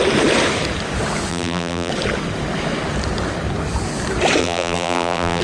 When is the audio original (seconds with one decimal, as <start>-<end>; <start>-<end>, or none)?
0.0-1.3; 1.9-4.4